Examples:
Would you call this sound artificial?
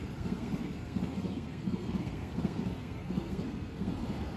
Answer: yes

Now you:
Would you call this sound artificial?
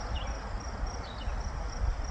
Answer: no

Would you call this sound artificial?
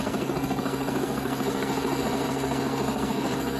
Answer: yes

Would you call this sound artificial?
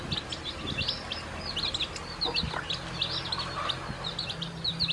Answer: no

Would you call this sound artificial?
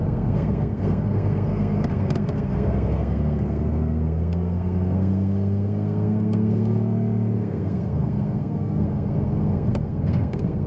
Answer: yes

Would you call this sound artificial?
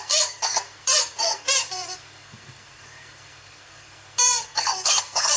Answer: yes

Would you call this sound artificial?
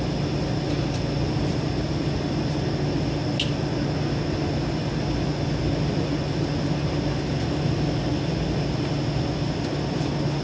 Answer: no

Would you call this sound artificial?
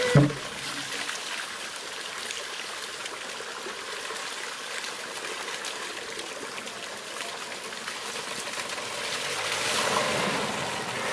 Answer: no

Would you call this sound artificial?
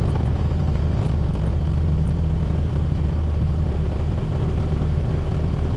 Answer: no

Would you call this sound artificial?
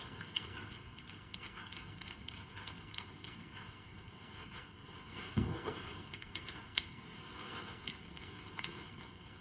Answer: yes